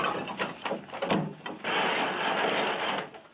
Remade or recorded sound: recorded